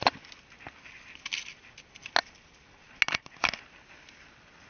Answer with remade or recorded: recorded